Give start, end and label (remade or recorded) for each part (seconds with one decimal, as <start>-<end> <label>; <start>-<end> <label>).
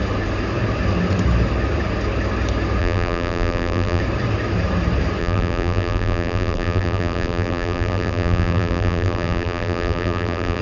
0.0-2.8 recorded; 2.8-4.0 remade; 4.0-5.2 recorded; 5.2-10.6 remade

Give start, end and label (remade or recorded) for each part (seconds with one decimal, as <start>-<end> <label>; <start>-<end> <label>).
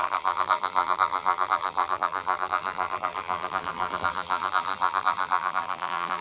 0.0-6.2 remade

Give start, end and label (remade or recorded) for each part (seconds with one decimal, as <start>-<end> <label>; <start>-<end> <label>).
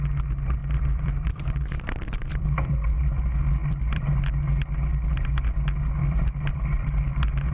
0.0-0.6 recorded; 0.6-3.2 remade; 3.2-3.6 recorded; 3.6-4.2 remade; 4.2-6.0 recorded; 6.0-7.0 remade; 7.0-7.5 recorded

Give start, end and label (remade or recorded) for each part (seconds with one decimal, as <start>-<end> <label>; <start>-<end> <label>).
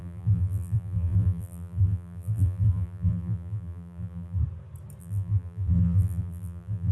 0.0-4.4 remade; 4.4-5.0 recorded; 5.0-6.9 remade